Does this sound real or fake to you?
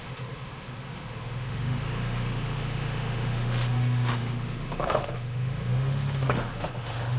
fake